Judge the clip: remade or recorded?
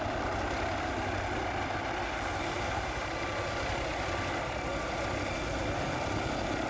recorded